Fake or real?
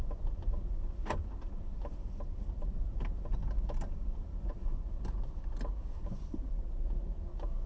real